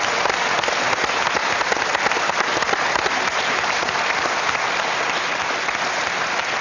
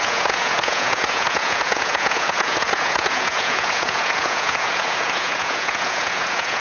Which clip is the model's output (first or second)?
second